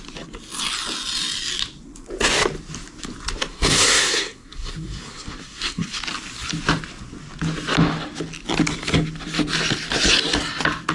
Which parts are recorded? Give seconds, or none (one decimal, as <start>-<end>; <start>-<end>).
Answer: 0.0-3.5; 6.0-10.9